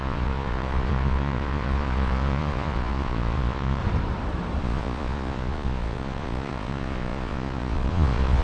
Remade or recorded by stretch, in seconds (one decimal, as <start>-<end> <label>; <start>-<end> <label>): 0.0-3.8 remade; 3.8-4.6 recorded; 4.6-8.4 remade